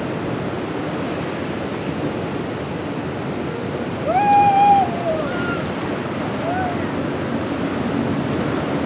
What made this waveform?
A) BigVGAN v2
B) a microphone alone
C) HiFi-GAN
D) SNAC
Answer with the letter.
B